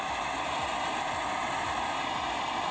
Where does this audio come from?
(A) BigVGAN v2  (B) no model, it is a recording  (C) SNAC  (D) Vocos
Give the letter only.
A